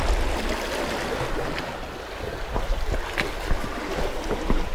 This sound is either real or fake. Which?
real